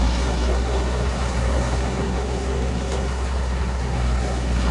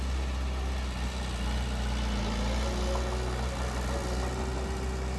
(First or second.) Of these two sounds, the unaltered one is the second